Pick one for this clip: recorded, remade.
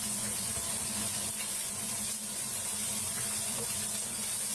remade